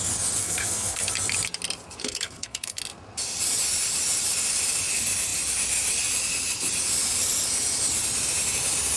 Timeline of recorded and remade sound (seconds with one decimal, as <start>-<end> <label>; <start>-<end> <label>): 0.0-0.4 recorded; 0.4-1.1 remade; 1.1-2.0 recorded; 2.0-2.8 remade; 2.8-9.0 recorded